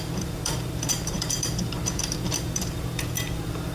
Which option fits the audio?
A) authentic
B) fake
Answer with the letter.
B